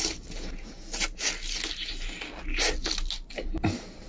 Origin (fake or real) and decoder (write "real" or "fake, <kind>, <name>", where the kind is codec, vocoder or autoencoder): real